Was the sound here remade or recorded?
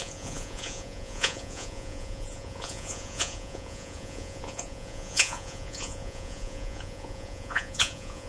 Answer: remade